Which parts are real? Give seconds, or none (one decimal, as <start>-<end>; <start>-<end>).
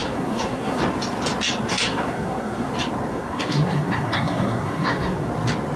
0.8-1.7; 2.7-3.1; 5.3-5.8